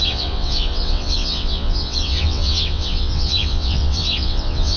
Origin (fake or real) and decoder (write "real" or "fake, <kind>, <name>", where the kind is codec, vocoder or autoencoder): fake, vocoder, WaveNeXt